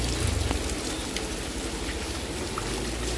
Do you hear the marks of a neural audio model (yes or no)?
no